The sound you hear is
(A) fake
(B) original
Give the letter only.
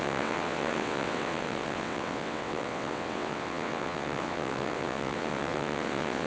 A